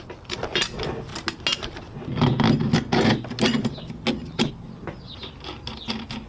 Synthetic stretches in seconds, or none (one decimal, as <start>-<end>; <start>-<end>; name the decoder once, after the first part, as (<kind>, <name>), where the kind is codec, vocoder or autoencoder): none